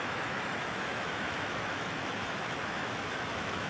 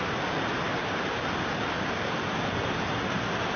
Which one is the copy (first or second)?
first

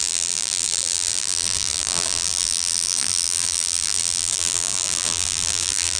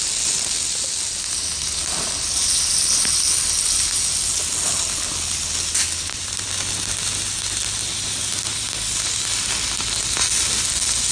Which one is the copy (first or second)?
first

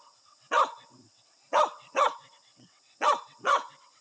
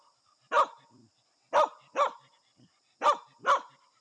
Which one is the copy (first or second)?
first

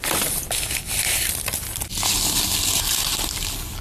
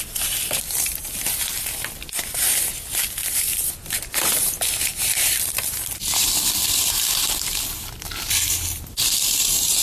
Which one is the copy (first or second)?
second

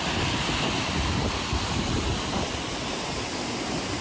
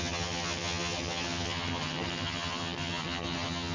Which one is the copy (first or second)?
second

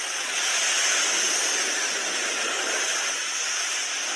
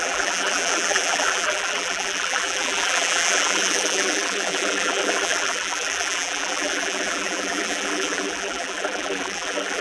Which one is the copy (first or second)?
second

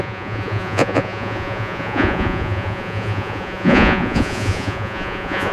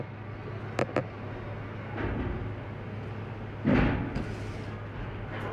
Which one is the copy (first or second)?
first